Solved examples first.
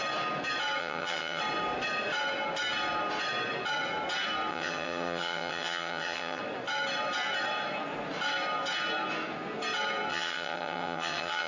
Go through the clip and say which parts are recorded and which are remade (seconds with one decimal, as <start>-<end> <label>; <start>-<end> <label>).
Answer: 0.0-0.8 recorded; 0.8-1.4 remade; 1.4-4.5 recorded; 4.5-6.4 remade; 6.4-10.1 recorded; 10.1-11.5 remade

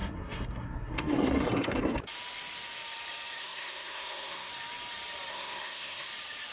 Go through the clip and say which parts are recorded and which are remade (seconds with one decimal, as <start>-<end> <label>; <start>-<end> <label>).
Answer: 0.0-1.8 remade; 1.8-3.4 recorded; 3.4-4.5 remade; 4.5-5.3 recorded; 5.3-6.1 remade; 6.1-6.5 recorded

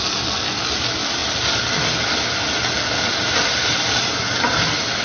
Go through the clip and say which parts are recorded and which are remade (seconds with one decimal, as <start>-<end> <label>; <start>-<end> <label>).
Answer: 0.0-5.0 recorded

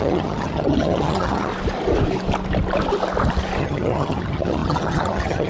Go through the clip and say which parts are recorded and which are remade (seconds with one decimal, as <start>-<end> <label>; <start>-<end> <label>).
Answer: 0.0-1.5 remade; 1.5-3.6 recorded; 3.6-5.5 remade

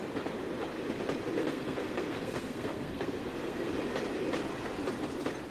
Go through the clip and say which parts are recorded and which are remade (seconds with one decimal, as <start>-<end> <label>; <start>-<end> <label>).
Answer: 0.0-1.4 recorded; 1.4-3.7 remade; 3.7-5.5 recorded

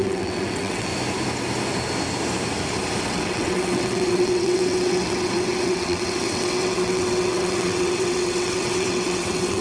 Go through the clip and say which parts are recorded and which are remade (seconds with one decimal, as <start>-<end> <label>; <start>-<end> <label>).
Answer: 0.0-0.9 remade; 0.9-3.0 recorded; 3.0-9.6 remade

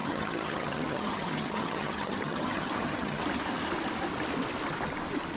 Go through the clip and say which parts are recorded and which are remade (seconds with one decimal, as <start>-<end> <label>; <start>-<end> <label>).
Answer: 0.0-3.2 remade; 3.2-5.4 recorded